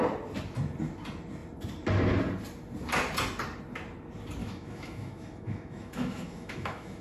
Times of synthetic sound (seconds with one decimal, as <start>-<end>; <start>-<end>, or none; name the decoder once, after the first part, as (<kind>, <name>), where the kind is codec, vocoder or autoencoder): 4.4-7.0 (autoencoder, DAC-VAE)